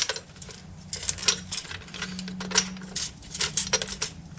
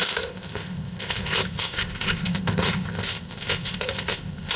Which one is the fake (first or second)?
second